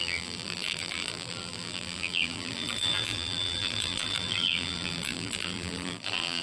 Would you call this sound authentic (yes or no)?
no